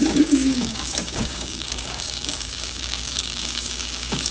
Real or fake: fake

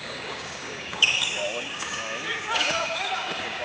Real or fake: fake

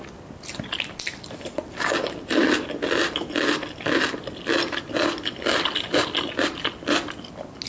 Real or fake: real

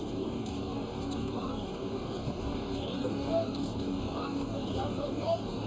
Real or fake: fake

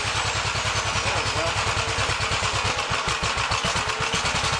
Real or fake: real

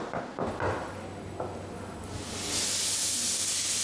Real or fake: real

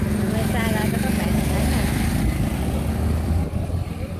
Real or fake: real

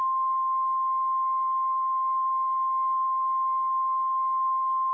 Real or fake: fake